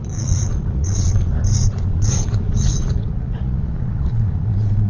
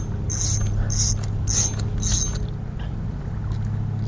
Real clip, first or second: second